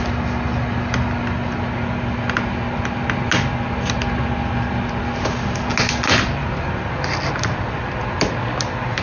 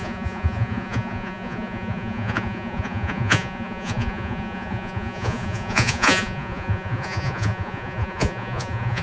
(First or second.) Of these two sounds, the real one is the first